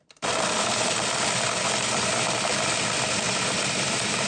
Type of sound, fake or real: fake